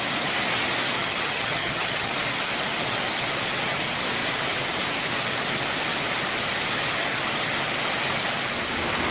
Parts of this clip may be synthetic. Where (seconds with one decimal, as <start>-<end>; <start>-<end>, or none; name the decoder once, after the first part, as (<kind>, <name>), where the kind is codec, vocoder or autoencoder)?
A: 1.0-2.1 (vocoder, HiFi-GAN)